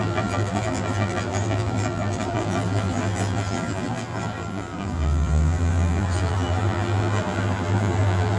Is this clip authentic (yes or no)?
no